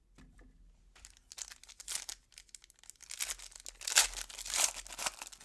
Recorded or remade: recorded